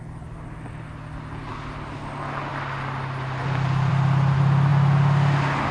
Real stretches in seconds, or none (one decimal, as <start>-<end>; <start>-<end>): 0.0-5.7